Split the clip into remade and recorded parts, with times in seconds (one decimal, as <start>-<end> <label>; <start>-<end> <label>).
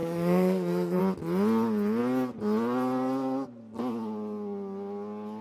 0.0-1.0 remade; 1.0-5.4 recorded